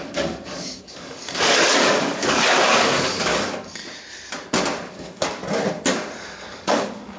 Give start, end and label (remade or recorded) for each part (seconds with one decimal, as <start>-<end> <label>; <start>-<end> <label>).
0.0-3.8 remade; 3.8-4.9 recorded; 4.9-5.4 remade; 5.4-6.2 recorded; 6.2-7.2 remade